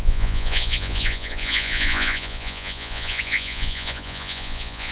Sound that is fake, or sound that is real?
fake